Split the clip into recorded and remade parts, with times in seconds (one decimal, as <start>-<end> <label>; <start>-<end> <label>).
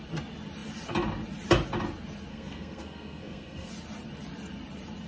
0.0-2.3 recorded; 2.3-3.7 remade; 3.7-5.1 recorded